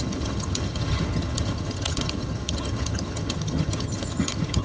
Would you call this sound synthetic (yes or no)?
yes